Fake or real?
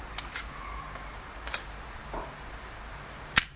fake